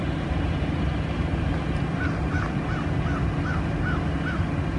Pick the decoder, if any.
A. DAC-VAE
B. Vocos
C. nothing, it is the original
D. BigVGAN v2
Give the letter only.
C